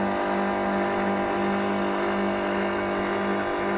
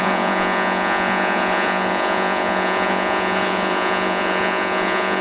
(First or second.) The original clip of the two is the first